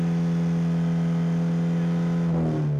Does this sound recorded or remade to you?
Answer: recorded